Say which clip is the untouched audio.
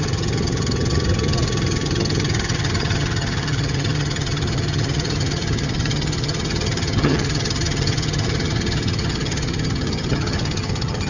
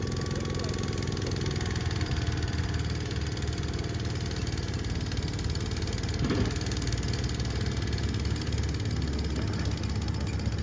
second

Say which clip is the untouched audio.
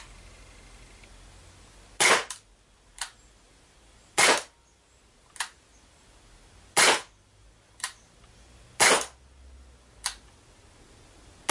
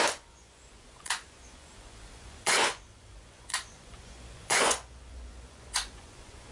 first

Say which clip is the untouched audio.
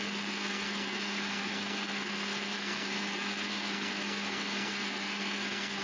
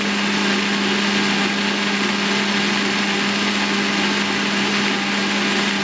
second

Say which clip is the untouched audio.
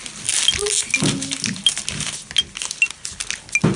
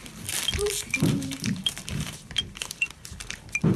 first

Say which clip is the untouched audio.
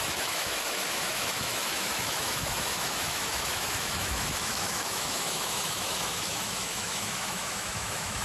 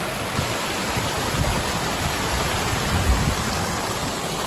second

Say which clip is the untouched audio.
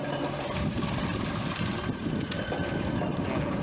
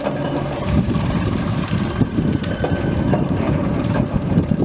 first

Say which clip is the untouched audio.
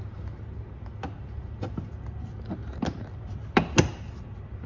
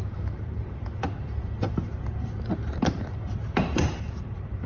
first